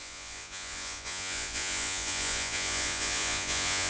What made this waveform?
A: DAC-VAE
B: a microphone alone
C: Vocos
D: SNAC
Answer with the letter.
C